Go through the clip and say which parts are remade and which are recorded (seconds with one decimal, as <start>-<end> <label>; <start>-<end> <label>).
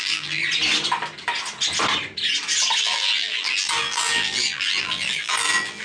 0.0-0.4 remade; 0.4-2.8 recorded; 2.8-5.8 remade